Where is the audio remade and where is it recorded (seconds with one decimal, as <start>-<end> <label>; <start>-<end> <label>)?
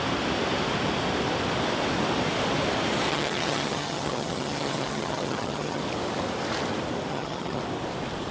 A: 0.0-3.1 recorded; 3.1-5.8 remade; 5.8-7.1 recorded; 7.1-7.6 remade; 7.6-8.3 recorded